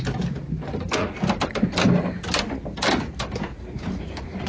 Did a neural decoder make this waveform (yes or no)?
no